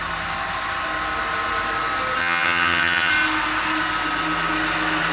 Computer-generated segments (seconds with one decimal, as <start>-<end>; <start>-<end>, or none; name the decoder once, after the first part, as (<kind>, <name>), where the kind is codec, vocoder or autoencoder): 2.2-3.1 (vocoder, HiFi-GAN)